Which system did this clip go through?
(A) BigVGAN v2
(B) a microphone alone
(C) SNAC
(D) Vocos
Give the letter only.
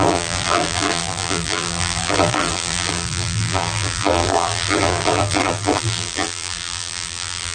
A